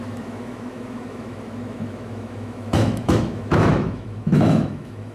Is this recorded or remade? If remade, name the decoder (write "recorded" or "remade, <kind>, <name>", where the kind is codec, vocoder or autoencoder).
remade, autoencoder, DAC-VAE